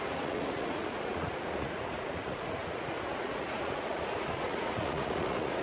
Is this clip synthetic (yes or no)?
yes